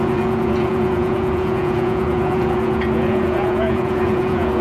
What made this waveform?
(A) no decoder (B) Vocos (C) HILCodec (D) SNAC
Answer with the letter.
B